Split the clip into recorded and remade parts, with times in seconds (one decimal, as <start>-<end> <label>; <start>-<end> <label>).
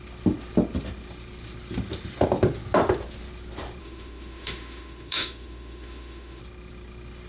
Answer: 0.0-3.8 recorded; 3.8-6.4 remade; 6.4-7.3 recorded